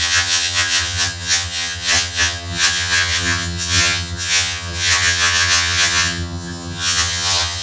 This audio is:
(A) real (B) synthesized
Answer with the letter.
B